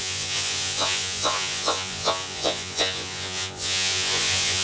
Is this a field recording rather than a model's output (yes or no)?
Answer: no